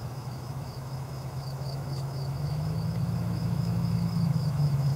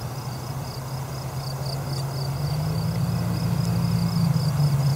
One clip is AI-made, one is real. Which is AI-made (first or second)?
first